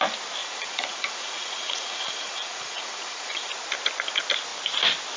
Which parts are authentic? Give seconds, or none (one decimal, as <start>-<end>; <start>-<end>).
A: 0.0-0.4; 3.5-5.2